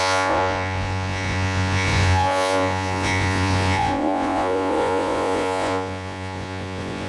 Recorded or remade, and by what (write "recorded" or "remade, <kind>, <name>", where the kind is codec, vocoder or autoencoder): remade, vocoder, Vocos